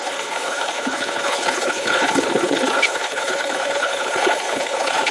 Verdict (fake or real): fake